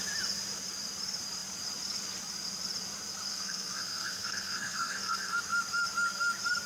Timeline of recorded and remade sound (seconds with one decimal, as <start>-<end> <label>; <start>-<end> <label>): 0.0-3.3 recorded; 3.3-5.4 remade; 5.4-6.7 recorded

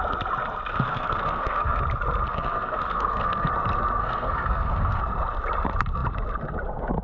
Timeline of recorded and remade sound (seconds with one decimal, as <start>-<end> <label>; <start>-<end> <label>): 0.0-0.7 recorded; 0.7-1.8 remade; 1.8-2.3 recorded; 2.3-3.5 remade; 3.5-4.0 recorded; 4.0-5.0 remade; 5.0-7.0 recorded

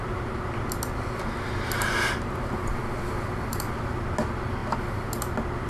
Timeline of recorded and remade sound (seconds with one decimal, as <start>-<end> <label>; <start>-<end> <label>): 0.0-5.7 recorded

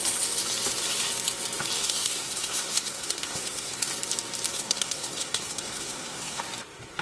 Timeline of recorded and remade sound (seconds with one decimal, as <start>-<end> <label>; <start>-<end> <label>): 0.0-1.8 recorded; 1.8-3.9 remade; 3.9-4.5 recorded; 4.5-6.4 remade; 6.4-7.0 recorded

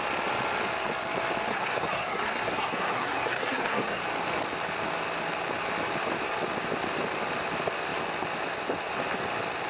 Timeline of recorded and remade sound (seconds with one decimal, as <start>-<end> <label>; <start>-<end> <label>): 0.0-1.5 recorded; 1.5-4.0 remade; 4.0-9.7 recorded

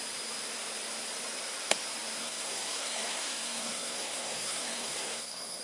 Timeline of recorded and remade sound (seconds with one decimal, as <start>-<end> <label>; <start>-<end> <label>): 0.0-2.2 recorded; 2.2-5.6 remade